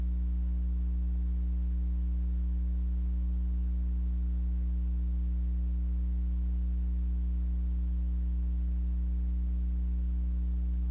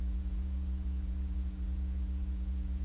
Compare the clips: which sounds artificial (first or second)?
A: second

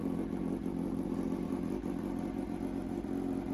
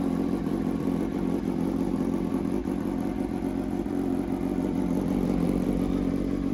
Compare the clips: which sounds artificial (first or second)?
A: second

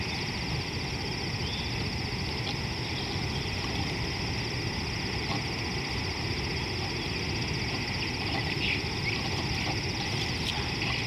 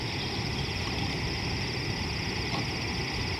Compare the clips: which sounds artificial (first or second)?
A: second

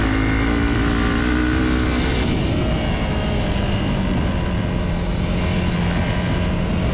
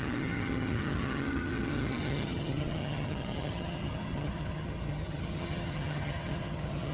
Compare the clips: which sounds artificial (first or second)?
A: second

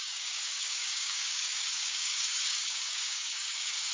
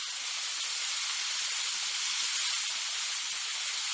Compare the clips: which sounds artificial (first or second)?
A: first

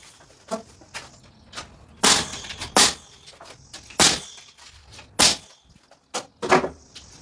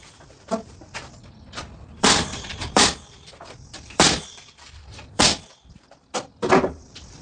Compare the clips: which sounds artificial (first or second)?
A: second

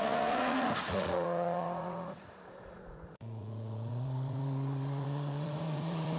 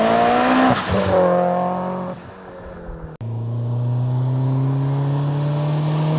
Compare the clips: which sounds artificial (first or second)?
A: first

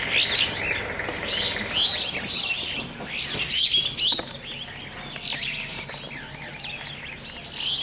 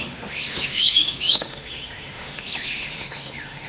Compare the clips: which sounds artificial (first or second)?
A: second